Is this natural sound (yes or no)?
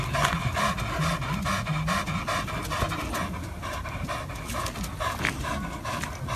yes